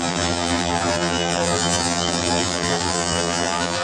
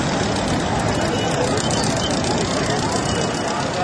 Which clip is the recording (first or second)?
second